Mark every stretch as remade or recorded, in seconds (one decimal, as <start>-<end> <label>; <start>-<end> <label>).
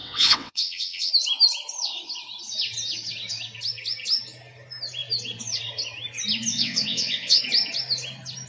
0.0-1.1 remade; 1.1-6.5 recorded; 6.5-7.4 remade; 7.4-8.5 recorded